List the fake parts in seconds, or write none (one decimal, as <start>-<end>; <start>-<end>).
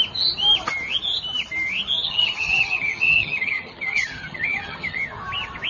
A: 2.0-5.0